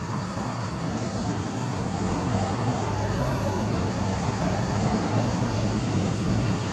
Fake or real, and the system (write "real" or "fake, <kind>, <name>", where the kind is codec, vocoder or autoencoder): fake, codec, SNAC